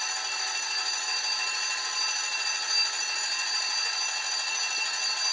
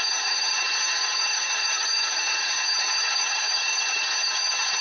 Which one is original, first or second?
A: first